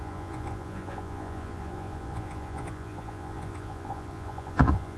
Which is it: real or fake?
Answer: fake